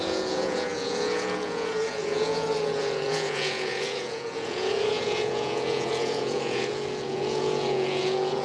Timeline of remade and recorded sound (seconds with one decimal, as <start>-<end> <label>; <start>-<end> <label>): 0.0-8.4 remade